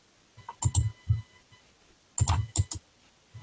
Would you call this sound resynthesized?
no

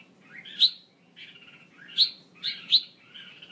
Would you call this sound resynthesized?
no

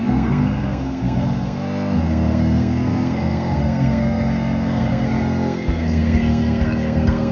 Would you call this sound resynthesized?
yes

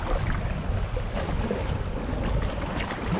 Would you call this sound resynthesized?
no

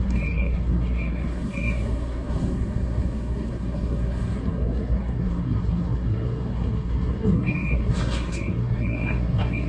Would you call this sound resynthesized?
yes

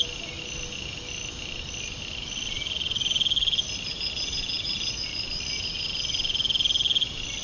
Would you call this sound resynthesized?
no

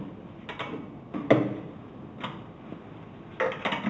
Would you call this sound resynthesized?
no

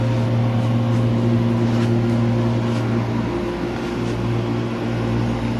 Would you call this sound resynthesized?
no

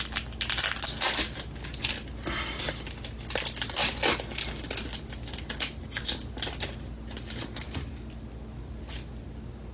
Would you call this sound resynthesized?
no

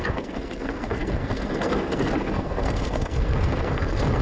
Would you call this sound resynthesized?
yes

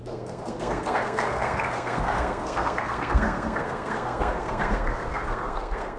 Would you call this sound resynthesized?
yes